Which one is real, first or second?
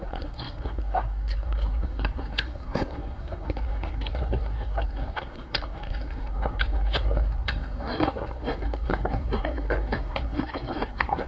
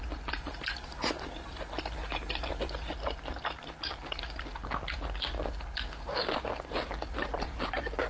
second